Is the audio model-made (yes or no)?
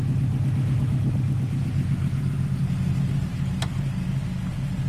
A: no